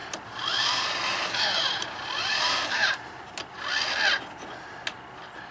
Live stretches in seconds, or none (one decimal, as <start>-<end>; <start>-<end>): 3.3-5.5